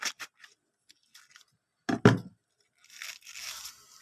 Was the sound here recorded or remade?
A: recorded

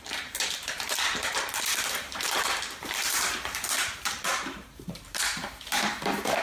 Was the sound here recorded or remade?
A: remade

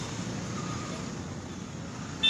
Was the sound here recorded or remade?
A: recorded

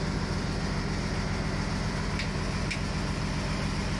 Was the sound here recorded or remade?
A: recorded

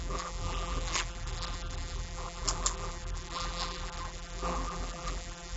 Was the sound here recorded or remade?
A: remade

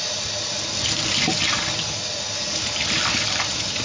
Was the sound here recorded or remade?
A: remade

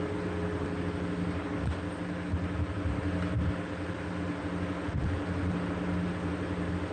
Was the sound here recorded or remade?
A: recorded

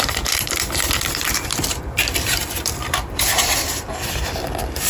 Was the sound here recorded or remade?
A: remade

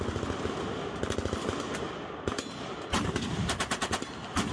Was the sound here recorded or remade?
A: recorded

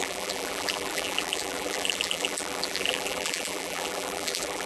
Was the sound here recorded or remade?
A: remade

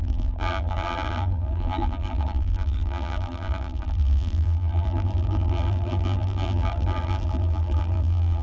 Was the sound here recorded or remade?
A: remade